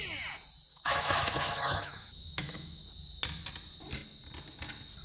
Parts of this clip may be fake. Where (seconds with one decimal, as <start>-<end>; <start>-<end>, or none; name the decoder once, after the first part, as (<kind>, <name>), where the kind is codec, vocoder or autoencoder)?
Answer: 0.7-2.8 (autoencoder, DAC-VAE)